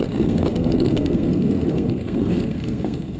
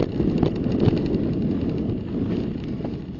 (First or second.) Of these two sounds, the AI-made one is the first